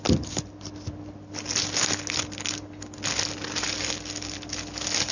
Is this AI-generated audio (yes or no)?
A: no